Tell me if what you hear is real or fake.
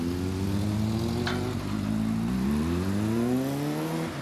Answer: real